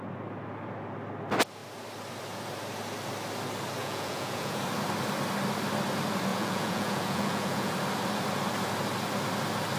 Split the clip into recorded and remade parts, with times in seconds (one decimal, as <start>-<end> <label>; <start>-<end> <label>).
0.0-3.8 recorded; 3.8-4.6 remade; 4.6-6.3 recorded; 6.3-7.7 remade; 7.7-9.8 recorded